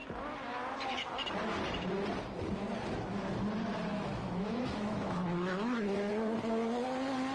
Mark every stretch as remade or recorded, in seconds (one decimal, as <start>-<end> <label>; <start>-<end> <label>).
0.0-3.9 recorded; 3.9-6.1 remade; 6.1-7.3 recorded